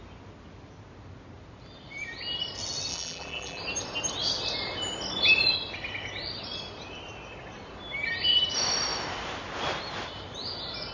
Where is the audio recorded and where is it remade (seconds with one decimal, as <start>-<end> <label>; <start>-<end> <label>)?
0.0-2.9 recorded; 2.9-3.6 remade; 3.6-10.9 recorded